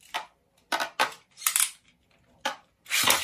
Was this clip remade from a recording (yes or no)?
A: no